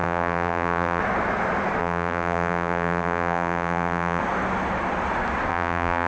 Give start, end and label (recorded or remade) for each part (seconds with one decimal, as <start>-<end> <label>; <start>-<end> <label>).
0.0-1.0 remade; 1.0-1.8 recorded; 1.8-4.2 remade; 4.2-5.5 recorded; 5.5-6.1 remade

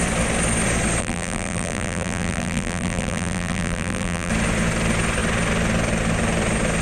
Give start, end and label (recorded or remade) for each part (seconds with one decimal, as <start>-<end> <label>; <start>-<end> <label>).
0.0-1.0 recorded; 1.0-4.3 remade; 4.3-6.8 recorded

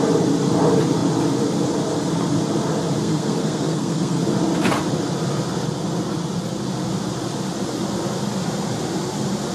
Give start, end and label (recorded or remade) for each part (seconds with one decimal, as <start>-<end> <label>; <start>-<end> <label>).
0.0-3.0 recorded; 3.0-4.2 remade; 4.2-9.5 recorded

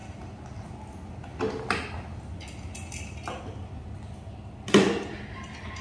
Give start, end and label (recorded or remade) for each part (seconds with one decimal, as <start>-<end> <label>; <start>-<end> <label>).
0.0-5.8 recorded

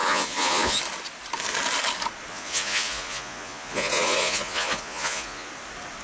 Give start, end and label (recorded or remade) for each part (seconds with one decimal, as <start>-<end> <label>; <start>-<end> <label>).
0.0-0.8 remade; 0.8-2.3 recorded; 2.3-5.5 remade; 5.5-6.0 recorded

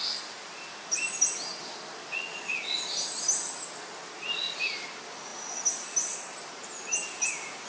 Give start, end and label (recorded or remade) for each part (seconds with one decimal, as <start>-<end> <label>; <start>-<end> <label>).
0.0-7.7 recorded

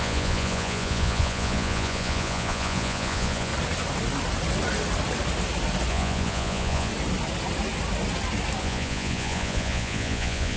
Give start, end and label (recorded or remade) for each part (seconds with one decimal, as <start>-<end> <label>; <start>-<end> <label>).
0.0-3.5 remade; 3.5-5.9 recorded; 5.9-6.9 remade; 6.9-8.6 recorded; 8.6-10.6 remade

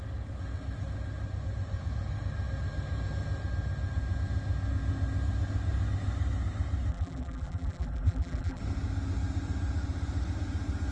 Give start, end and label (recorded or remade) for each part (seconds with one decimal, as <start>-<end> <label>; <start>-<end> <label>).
0.0-6.9 recorded; 6.9-8.6 remade; 8.6-10.9 recorded